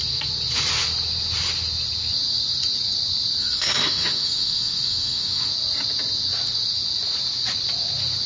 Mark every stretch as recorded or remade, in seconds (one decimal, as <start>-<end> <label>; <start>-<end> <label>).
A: 0.0-3.4 recorded; 3.4-5.5 remade; 5.5-8.3 recorded